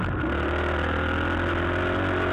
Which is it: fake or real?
real